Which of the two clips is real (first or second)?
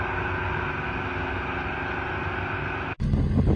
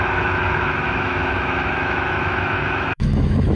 first